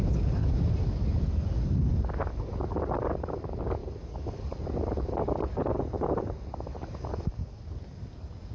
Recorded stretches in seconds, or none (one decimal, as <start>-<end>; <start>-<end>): 0.0-0.4; 1.2-8.5